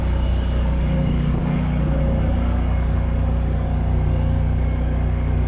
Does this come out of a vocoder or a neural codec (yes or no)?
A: yes